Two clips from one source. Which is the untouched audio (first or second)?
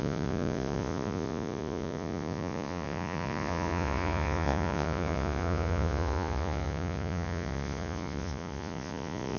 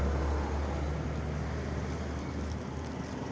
second